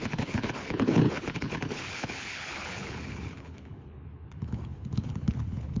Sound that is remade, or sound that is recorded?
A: remade